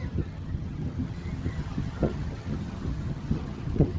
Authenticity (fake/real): fake